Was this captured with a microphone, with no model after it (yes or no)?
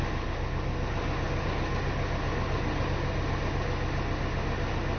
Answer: yes